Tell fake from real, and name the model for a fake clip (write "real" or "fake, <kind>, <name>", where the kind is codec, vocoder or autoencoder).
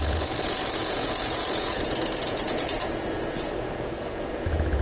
fake, vocoder, Vocos